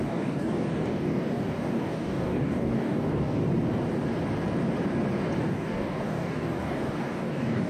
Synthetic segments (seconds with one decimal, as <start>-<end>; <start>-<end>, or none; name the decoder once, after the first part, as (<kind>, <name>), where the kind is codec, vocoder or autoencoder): 0.0-3.4 (codec, DAC); 5.4-7.7